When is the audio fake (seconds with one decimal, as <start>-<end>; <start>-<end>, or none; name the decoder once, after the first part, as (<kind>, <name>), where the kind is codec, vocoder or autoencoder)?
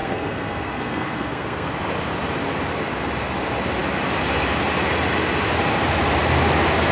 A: 0.0-1.7 (codec, SNAC)